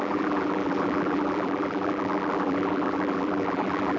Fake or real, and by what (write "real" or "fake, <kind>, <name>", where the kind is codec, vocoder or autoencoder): fake, vocoder, BigVGAN v2